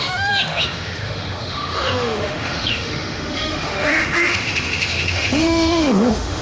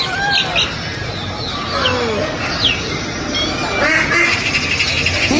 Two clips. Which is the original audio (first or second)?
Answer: second